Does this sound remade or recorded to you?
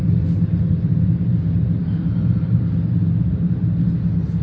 recorded